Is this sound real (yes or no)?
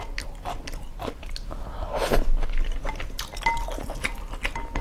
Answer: yes